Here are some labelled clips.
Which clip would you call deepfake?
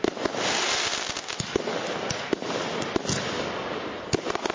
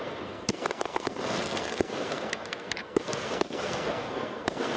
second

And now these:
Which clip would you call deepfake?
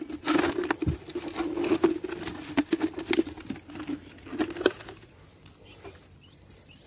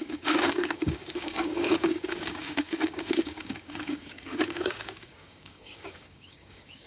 second